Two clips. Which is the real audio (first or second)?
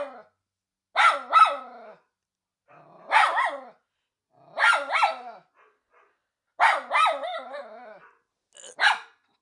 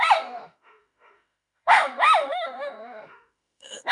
first